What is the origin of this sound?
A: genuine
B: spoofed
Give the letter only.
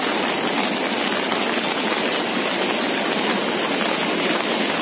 A